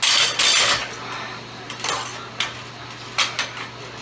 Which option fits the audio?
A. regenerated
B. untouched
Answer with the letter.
B